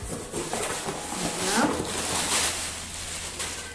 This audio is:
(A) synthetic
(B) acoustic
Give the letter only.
B